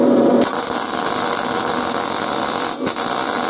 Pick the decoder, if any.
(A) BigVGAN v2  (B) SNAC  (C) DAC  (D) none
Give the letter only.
D